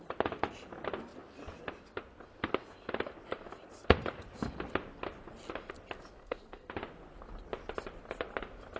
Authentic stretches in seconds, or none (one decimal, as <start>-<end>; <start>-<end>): 0.0-6.2; 6.7-8.8